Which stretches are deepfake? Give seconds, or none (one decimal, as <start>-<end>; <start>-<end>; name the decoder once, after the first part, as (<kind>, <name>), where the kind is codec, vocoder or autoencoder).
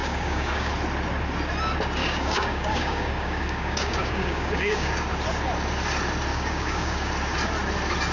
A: 0.0-0.7 (codec, DAC); 2.0-4.9; 6.3-7.1